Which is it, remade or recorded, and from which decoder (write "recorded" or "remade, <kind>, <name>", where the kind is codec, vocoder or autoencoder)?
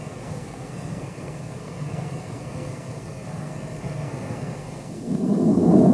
remade, codec, SNAC